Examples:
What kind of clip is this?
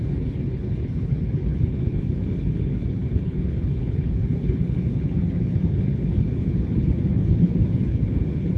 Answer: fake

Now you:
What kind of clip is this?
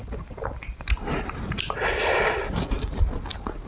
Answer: real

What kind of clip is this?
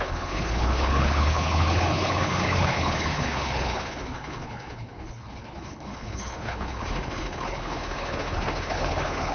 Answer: fake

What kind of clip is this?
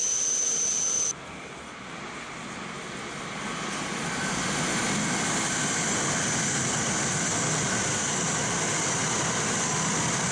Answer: real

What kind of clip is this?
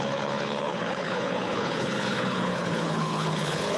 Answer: fake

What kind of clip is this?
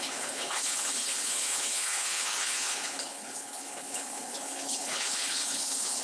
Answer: fake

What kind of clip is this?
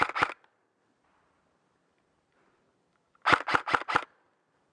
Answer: real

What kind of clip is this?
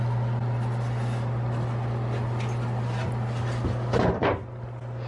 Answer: real